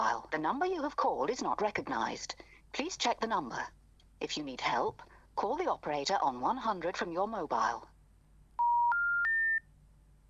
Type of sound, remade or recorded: recorded